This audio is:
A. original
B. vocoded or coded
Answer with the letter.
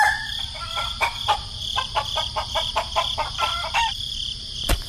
B